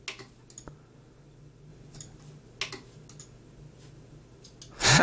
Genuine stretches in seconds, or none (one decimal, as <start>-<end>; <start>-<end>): 0.0-5.0